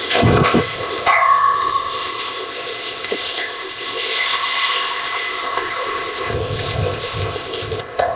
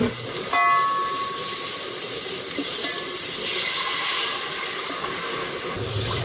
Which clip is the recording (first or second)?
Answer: second